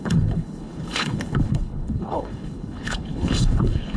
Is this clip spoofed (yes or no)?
yes